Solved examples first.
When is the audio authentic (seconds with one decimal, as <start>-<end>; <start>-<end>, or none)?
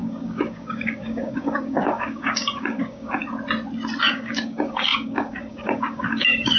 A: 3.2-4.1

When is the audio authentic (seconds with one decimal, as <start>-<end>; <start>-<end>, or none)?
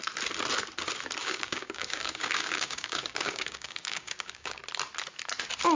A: 0.0-1.2; 4.6-5.7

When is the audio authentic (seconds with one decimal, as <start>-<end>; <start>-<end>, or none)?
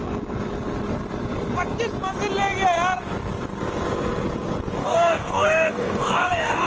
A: 0.0-4.8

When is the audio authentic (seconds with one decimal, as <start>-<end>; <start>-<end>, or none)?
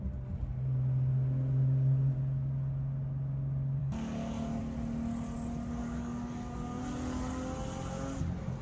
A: 0.0-3.8; 4.6-5.8; 6.8-8.6